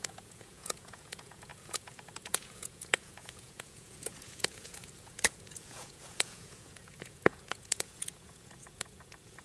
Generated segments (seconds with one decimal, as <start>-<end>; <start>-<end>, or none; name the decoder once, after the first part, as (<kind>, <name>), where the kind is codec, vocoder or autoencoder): 0.0-9.4 (vocoder, Vocos)